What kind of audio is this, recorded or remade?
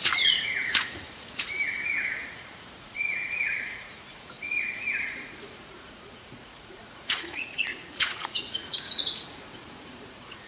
remade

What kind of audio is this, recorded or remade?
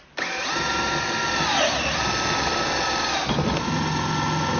recorded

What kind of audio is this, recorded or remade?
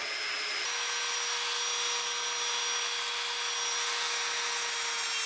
recorded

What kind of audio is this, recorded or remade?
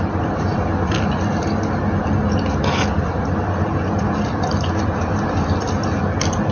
recorded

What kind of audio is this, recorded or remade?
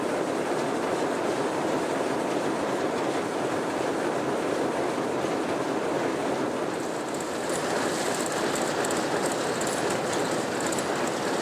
recorded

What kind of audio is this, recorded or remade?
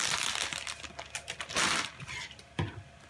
recorded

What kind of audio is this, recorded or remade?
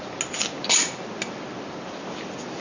recorded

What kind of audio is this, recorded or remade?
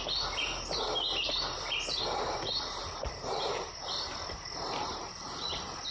recorded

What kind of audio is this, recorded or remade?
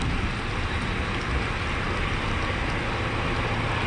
recorded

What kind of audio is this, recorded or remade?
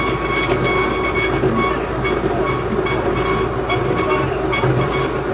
recorded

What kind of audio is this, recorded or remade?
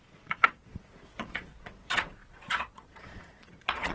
remade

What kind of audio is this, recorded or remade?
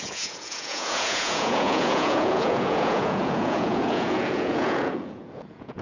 remade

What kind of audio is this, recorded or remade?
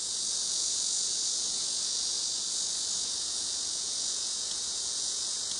remade